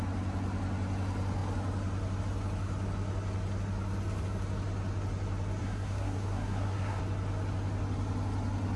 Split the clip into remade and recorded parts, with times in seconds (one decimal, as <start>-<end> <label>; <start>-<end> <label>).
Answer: 0.0-5.6 recorded; 5.6-7.0 remade; 7.0-8.8 recorded